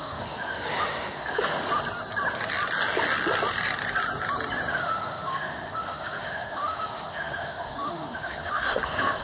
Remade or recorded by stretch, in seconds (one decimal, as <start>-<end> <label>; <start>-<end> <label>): 0.0-1.6 remade; 1.6-4.7 recorded; 4.7-9.2 remade